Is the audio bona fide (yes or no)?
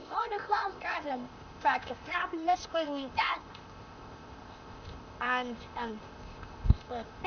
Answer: no